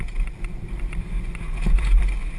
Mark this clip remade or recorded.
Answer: recorded